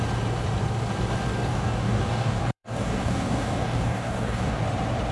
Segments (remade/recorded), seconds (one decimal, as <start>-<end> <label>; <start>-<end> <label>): 0.0-1.5 recorded; 1.5-4.6 remade; 4.6-5.1 recorded